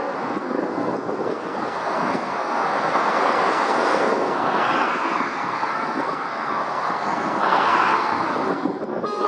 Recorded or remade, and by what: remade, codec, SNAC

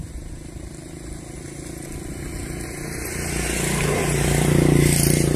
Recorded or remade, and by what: recorded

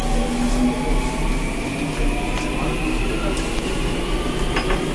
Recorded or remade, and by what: recorded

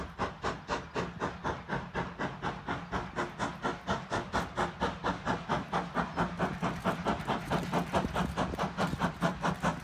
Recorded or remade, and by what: recorded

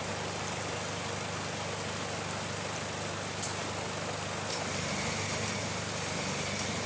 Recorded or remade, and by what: recorded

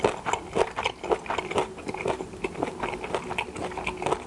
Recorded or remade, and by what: recorded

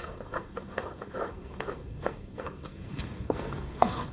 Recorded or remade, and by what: remade, codec, SNAC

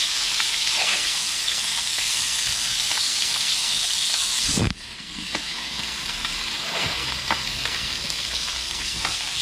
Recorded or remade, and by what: remade, codec, SNAC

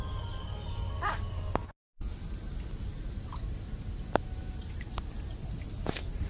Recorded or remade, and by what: recorded